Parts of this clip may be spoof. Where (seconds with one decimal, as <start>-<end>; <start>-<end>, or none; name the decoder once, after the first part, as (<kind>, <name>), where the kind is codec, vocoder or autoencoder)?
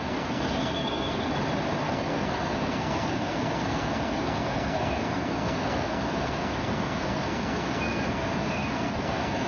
0.0-1.3 (codec, SNAC); 1.8-9.5